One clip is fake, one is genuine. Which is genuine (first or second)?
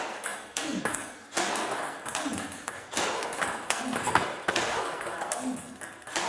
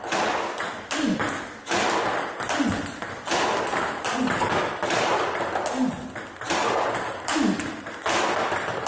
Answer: second